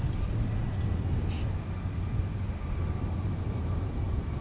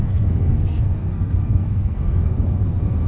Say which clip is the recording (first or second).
first